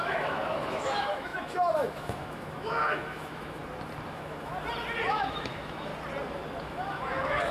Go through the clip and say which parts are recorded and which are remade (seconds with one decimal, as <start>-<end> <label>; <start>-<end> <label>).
0.0-3.6 remade; 3.6-4.1 recorded; 4.1-4.5 remade; 4.5-5.1 recorded; 5.1-5.9 remade; 5.9-6.6 recorded; 6.6-7.5 remade